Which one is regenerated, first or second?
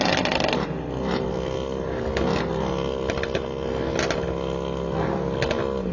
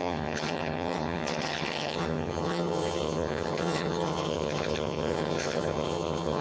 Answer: second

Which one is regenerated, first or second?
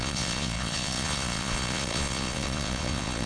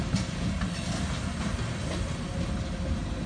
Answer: first